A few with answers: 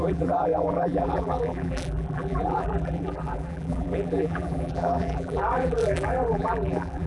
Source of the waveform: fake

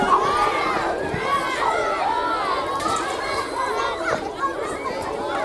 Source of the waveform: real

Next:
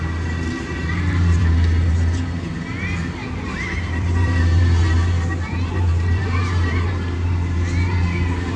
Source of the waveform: fake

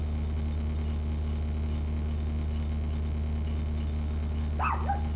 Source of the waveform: real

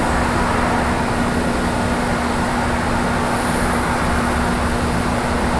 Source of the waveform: real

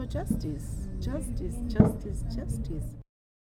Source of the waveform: real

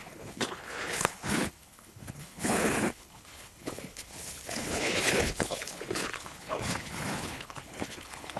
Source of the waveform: fake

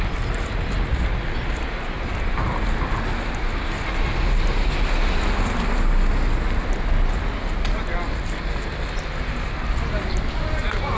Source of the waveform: real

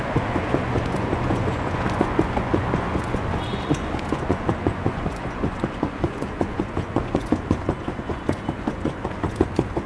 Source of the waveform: fake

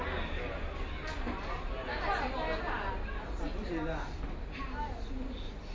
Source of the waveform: real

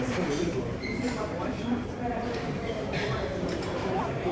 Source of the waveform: fake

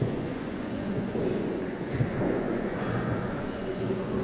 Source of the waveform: fake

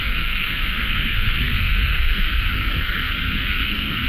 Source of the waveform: fake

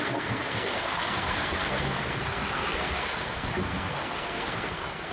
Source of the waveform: fake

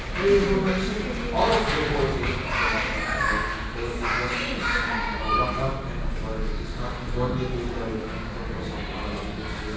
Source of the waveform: real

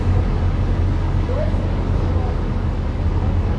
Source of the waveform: fake